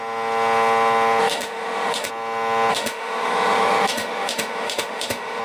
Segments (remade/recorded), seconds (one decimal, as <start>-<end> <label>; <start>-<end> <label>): 0.0-1.2 recorded; 1.2-2.1 remade; 2.1-2.7 recorded; 2.7-5.4 remade